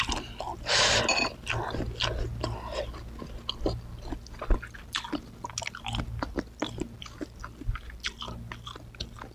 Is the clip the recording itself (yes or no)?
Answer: yes